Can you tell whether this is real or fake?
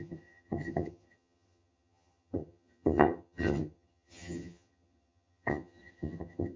fake